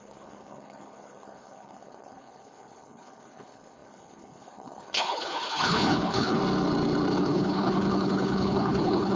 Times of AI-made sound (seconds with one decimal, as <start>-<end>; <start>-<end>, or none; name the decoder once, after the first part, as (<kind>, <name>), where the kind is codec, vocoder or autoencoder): 0.0-6.4 (codec, HILCodec); 7.2-9.2